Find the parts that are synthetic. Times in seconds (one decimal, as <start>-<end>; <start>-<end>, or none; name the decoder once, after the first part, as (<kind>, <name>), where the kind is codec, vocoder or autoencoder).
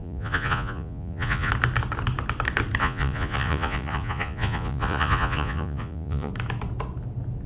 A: 0.0-1.5 (vocoder, Vocos); 2.8-6.3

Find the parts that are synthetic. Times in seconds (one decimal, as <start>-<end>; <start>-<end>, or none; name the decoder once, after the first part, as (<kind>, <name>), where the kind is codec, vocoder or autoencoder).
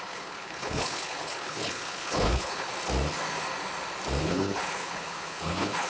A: 0.0-2.7 (codec, HILCodec); 4.2-5.9